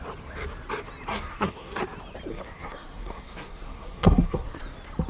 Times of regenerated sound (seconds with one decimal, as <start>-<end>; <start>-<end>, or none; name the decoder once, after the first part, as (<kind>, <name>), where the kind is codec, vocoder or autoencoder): 1.1-1.8 (codec, SNAC); 2.3-4.6

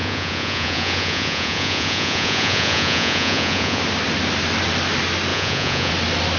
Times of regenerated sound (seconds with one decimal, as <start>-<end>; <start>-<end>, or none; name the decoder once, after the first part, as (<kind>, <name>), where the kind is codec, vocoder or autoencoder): 0.0-3.8 (vocoder, Vocos); 5.3-5.9

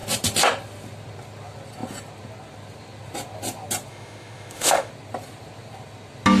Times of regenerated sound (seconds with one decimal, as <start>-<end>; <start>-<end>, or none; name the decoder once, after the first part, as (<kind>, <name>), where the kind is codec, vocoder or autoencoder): 3.9-4.9 (autoencoder, DAC-VAE)

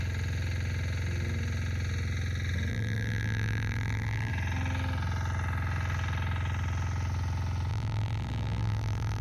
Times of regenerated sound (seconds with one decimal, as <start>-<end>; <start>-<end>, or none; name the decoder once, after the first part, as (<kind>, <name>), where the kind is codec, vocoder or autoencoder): 2.7-4.3 (vocoder, BigVGAN v2); 7.7-9.2

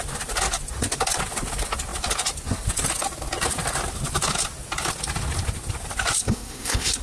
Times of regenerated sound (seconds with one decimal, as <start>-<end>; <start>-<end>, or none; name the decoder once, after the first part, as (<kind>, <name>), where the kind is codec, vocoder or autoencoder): 6.2-7.0 (codec, SNAC)